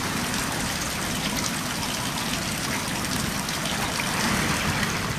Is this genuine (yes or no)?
yes